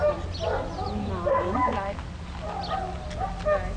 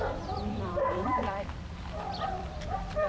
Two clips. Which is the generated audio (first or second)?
second